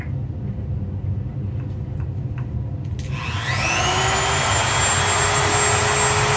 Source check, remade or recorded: recorded